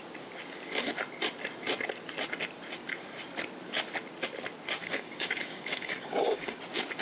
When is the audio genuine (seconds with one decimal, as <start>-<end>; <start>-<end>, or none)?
0.0-4.8; 6.6-7.0